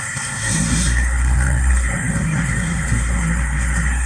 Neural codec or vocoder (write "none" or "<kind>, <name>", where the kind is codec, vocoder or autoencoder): codec, SNAC